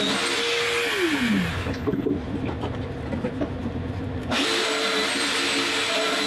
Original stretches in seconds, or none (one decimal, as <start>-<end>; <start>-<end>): 0.0-1.5; 2.1-6.3